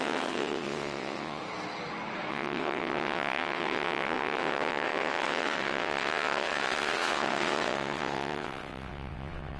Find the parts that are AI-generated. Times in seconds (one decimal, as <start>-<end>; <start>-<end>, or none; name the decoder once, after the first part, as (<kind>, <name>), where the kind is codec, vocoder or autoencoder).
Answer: 0.0-1.4 (vocoder, WaveNeXt); 2.3-9.6